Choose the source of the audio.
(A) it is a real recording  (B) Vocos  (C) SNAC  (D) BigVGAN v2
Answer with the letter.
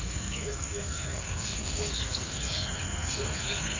C